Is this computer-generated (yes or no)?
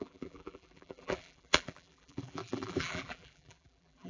yes